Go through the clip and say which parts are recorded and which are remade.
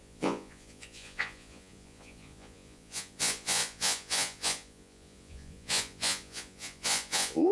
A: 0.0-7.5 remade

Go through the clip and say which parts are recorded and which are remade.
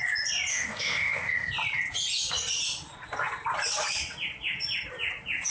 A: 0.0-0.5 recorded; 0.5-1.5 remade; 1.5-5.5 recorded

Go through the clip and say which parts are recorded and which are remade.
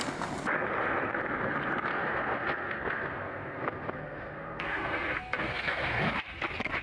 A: 0.0-1.9 recorded; 1.9-6.0 remade; 6.0-6.8 recorded